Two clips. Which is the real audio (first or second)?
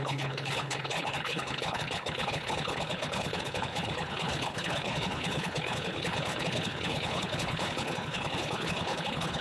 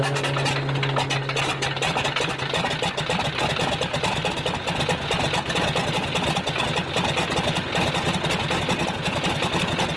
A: second